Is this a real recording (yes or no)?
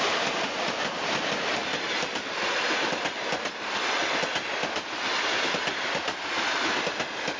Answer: yes